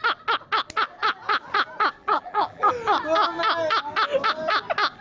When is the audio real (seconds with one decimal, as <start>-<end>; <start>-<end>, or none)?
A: 0.0-2.0; 2.7-5.0